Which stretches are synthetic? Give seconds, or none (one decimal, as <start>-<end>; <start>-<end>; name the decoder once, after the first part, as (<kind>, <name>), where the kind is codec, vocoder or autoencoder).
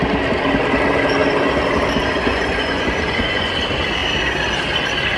2.3-3.5 (vocoder, Vocos)